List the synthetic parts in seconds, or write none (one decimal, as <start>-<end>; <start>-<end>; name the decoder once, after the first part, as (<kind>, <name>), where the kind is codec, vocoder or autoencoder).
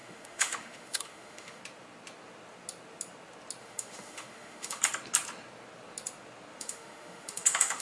0.0-1.6 (autoencoder, DAC-VAE); 3.6-4.8; 6.6-7.8